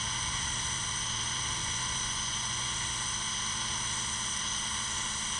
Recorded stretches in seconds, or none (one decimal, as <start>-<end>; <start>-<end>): 0.0-1.6; 2.7-5.4